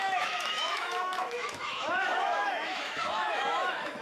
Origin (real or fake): fake